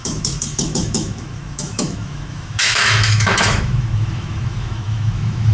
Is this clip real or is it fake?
fake